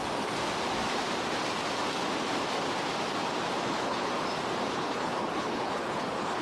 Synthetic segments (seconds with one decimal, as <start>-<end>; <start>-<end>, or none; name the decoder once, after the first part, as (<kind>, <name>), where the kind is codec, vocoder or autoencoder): 3.6-4.1 (codec, HILCodec); 4.7-6.4